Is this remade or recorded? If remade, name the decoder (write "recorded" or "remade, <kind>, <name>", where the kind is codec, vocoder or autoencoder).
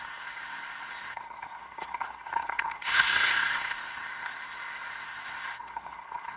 remade, codec, SNAC